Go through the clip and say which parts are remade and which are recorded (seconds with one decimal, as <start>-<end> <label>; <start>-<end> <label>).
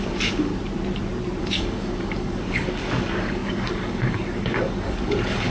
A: 0.0-0.5 remade; 0.5-1.4 recorded; 1.4-5.5 remade